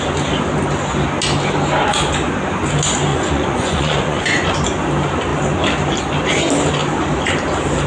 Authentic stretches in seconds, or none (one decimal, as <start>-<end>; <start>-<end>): 0.0-3.1; 4.5-7.9

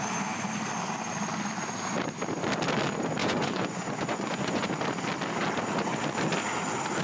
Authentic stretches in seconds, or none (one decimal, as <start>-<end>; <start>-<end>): 0.0-3.2; 4.6-7.0

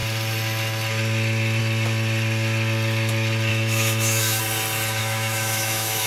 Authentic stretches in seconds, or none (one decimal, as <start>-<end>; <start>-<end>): 0.0-3.5; 4.4-5.0